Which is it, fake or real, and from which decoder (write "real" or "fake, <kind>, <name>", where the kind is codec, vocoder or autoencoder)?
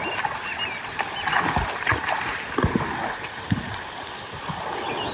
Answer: real